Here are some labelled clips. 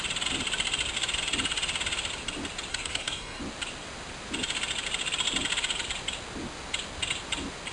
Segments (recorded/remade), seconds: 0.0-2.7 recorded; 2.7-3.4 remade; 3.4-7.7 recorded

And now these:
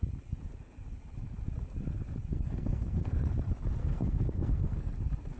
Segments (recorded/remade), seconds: 0.0-2.3 recorded; 2.3-3.3 remade; 3.3-3.8 recorded; 3.8-4.9 remade; 4.9-5.4 recorded

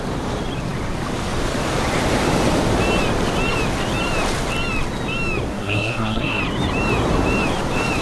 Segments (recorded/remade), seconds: 0.0-5.5 recorded; 5.5-6.4 remade; 6.4-8.0 recorded

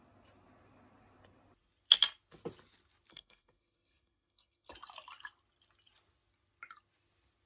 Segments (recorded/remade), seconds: 0.0-3.1 recorded; 3.1-4.7 remade; 4.7-7.5 recorded

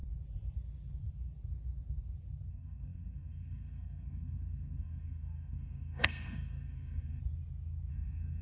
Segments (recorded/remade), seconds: 0.0-2.5 recorded; 2.5-7.2 remade; 7.2-7.9 recorded; 7.9-8.4 remade

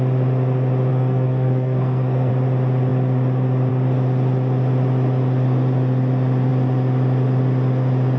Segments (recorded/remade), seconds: 0.0-0.9 recorded; 0.9-2.3 remade; 2.3-8.2 recorded

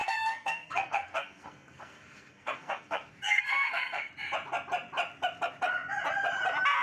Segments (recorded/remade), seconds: 0.0-4.1 remade; 4.1-6.8 recorded